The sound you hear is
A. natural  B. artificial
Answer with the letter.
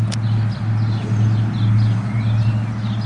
A